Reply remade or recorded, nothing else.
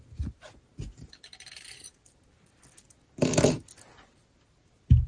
recorded